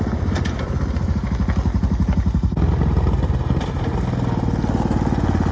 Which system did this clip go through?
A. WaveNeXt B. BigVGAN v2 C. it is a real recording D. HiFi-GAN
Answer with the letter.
C